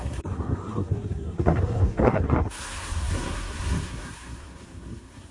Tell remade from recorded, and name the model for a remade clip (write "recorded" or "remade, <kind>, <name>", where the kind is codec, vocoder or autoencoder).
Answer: remade, codec, SNAC